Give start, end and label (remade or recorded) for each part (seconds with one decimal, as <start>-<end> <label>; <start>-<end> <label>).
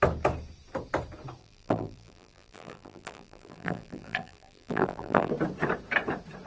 0.0-1.4 recorded; 1.4-5.3 remade; 5.3-6.5 recorded